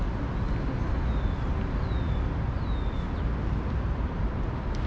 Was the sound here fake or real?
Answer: real